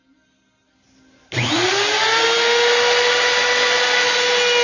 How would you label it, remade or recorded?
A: recorded